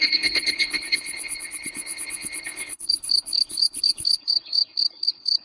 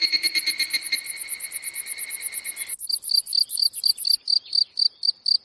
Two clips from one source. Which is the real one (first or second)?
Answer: second